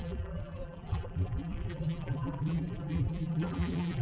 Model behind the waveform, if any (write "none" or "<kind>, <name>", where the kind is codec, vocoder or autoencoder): vocoder, BigVGAN v2